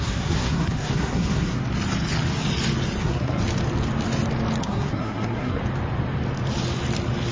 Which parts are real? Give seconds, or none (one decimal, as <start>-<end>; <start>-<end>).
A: 1.6-3.0; 3.4-4.6; 5.6-7.3